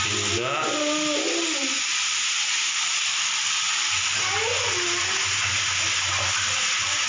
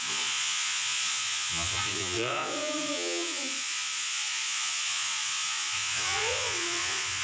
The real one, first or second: first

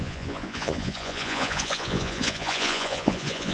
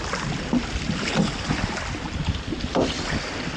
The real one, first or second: second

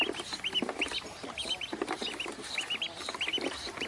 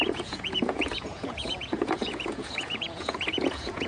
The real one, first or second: first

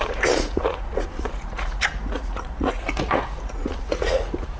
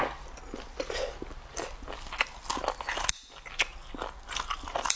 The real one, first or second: second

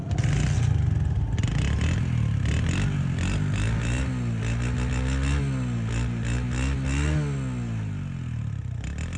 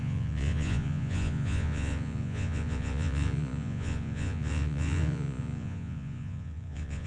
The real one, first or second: first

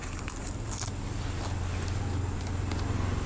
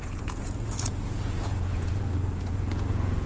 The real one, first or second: first